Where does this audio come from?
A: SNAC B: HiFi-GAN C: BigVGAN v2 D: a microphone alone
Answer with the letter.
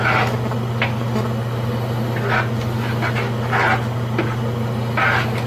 D